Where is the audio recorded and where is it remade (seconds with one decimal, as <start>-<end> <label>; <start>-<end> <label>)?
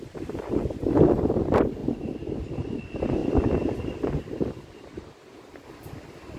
0.0-3.2 remade; 3.2-5.4 recorded; 5.4-6.4 remade